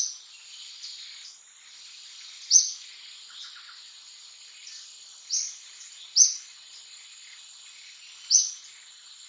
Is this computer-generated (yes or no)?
no